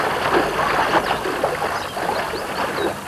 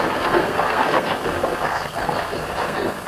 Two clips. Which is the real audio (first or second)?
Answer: first